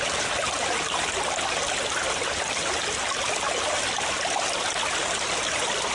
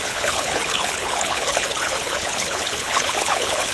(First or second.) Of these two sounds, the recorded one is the first